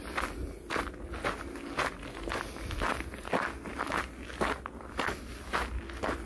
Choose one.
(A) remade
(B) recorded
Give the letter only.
B